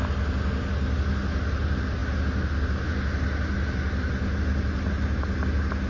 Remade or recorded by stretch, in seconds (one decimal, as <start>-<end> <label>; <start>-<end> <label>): 0.0-5.9 recorded